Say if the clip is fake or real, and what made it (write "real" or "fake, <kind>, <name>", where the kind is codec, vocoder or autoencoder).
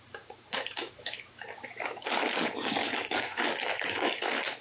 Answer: fake, autoencoder, DAC-VAE